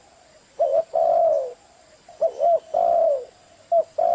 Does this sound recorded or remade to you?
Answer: recorded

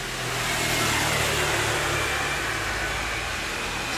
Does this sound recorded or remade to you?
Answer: recorded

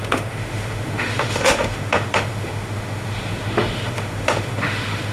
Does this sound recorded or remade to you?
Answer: remade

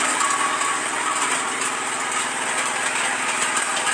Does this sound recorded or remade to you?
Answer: recorded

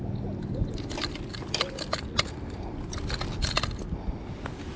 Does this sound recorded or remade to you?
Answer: recorded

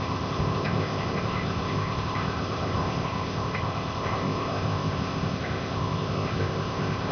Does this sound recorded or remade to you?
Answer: remade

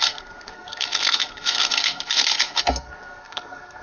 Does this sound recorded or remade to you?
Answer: remade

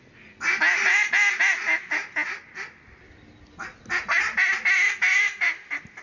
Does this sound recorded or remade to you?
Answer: recorded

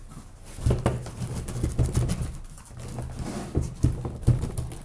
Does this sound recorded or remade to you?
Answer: recorded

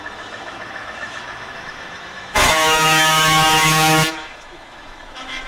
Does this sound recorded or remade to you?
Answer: remade